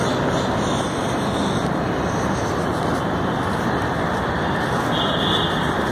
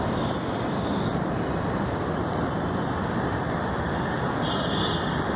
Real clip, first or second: first